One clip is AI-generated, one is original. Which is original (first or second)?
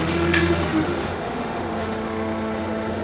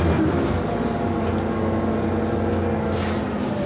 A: second